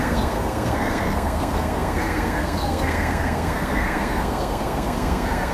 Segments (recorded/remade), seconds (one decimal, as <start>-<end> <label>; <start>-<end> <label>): 0.0-5.5 remade

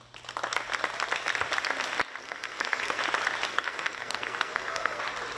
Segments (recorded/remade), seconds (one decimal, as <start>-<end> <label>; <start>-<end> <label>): 0.0-2.2 recorded; 2.2-3.0 remade; 3.0-3.5 recorded; 3.5-5.0 remade; 5.0-5.4 recorded

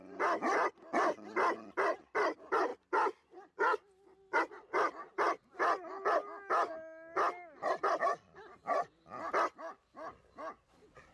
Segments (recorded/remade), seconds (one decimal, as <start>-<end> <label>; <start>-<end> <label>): 0.0-11.1 recorded

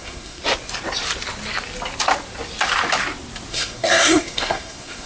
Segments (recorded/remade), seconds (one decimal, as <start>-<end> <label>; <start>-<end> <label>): 0.0-0.4 remade; 0.4-3.5 recorded; 3.5-5.1 remade